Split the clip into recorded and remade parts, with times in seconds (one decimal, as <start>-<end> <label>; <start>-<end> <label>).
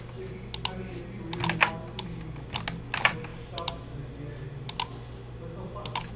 0.0-3.3 recorded; 3.3-3.8 remade; 3.8-6.2 recorded